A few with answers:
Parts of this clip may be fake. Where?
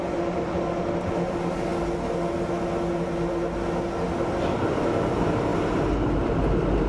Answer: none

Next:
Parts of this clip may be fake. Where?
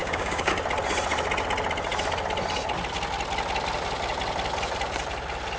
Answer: 0.0-0.5